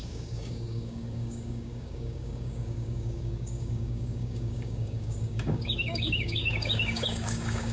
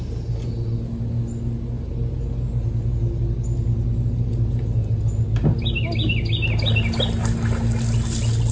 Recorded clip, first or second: second